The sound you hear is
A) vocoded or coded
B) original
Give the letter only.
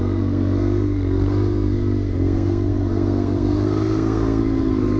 A